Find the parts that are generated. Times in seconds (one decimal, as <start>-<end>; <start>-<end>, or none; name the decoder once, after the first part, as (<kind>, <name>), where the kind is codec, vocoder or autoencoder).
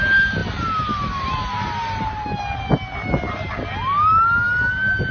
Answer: none